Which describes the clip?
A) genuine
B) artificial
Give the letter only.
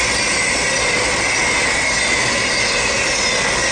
A